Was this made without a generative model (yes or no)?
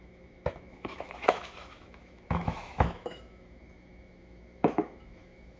no